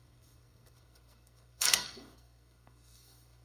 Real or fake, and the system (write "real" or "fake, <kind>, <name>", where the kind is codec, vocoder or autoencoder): fake, codec, SNAC